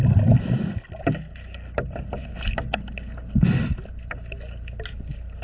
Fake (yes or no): no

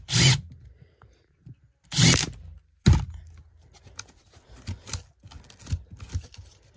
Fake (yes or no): no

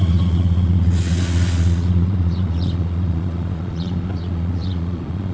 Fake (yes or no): yes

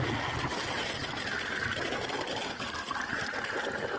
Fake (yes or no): no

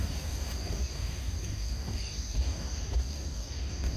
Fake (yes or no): yes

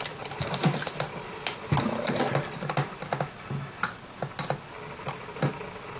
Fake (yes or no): no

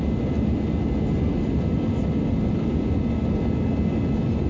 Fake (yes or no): no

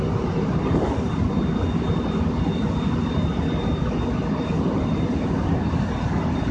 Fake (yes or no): no